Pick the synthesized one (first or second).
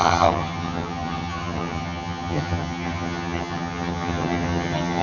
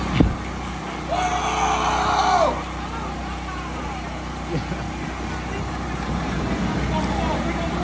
first